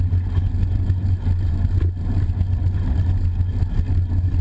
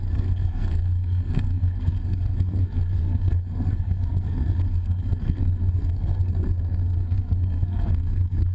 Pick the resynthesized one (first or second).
second